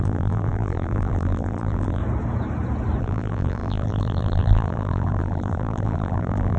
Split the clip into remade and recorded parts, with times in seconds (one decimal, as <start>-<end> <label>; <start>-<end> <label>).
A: 0.0-2.0 remade; 2.0-3.0 recorded; 3.0-6.6 remade